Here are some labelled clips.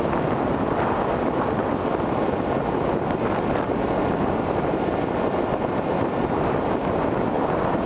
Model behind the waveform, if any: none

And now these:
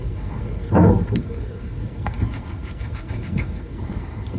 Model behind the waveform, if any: codec, SNAC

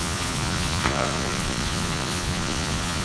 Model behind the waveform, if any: vocoder, Vocos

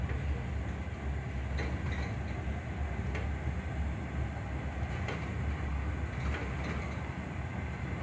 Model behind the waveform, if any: none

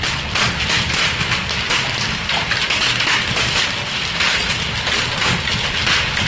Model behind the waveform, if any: none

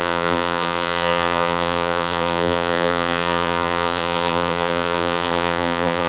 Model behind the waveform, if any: vocoder, BigVGAN v2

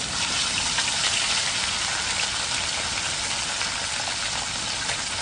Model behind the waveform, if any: none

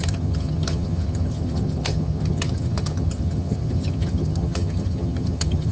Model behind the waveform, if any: vocoder, HiFi-GAN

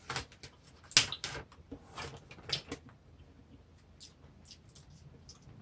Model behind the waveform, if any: none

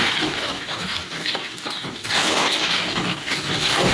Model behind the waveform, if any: codec, DAC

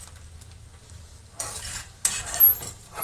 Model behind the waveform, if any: none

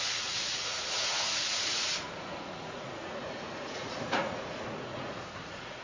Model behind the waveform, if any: vocoder, Vocos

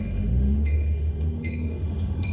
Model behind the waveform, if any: autoencoder, DAC-VAE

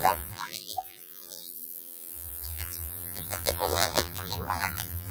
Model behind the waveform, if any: vocoder, BigVGAN v2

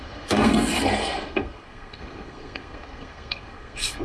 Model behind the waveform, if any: codec, SNAC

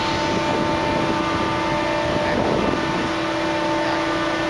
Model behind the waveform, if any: none